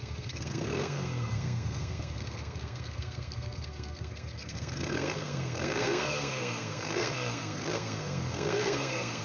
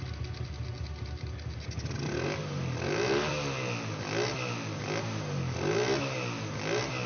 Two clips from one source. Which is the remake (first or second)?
first